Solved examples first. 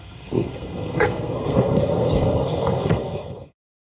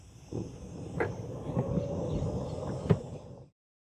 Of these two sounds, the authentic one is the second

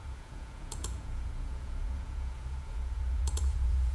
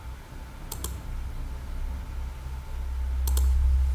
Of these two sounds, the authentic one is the second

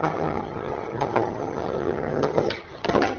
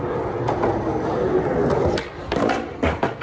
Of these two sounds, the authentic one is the second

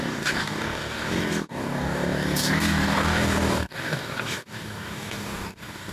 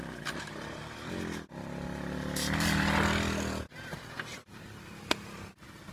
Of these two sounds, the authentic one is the second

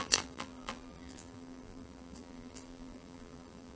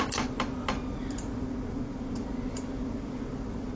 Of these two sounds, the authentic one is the second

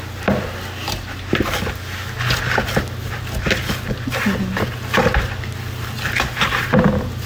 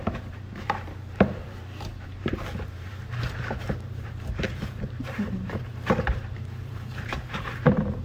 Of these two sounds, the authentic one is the first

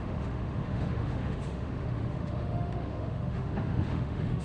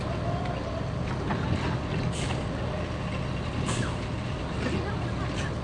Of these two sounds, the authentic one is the second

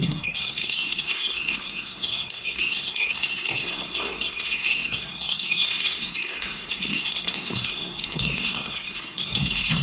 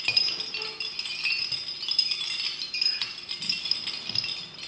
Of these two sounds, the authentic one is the second